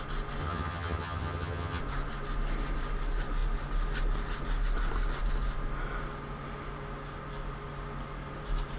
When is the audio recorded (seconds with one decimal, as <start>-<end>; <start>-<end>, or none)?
0.0-0.4; 1.8-8.8